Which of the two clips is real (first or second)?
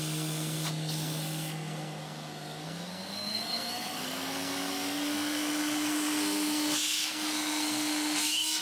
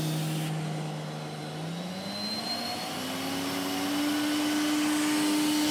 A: second